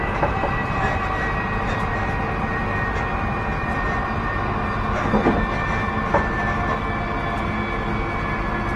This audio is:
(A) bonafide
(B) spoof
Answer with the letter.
A